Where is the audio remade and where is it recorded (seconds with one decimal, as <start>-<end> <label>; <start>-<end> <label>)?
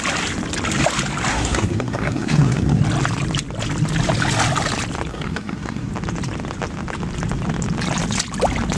0.0-1.3 recorded; 1.3-2.8 remade; 2.8-5.1 recorded; 5.1-5.9 remade; 5.9-8.8 recorded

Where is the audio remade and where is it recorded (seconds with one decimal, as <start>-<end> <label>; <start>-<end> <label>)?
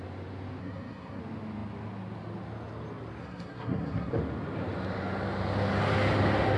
0.0-0.6 recorded; 0.6-1.2 remade; 1.2-3.2 recorded; 3.2-4.1 remade; 4.1-6.6 recorded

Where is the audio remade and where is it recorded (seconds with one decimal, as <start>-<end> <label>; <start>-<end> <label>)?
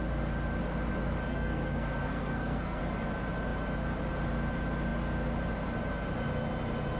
0.0-1.3 recorded; 1.3-2.8 remade; 2.8-7.0 recorded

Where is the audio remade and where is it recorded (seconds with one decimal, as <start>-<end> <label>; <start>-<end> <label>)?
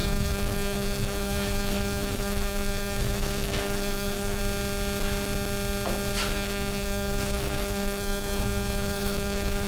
0.0-4.4 remade; 4.4-6.3 recorded; 6.3-9.7 remade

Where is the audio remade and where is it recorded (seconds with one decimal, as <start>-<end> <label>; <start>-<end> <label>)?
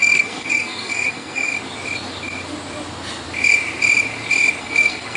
0.0-1.5 remade; 1.5-4.6 recorded; 4.6-5.2 remade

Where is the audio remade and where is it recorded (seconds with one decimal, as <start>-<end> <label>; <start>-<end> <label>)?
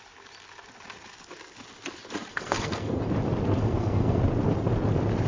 0.0-2.3 recorded; 2.3-3.0 remade; 3.0-3.6 recorded; 3.6-4.2 remade; 4.2-5.3 recorded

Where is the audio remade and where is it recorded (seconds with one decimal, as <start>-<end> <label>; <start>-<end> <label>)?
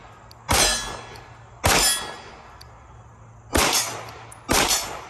0.0-5.1 recorded